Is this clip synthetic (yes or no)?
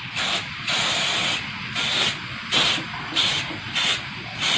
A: no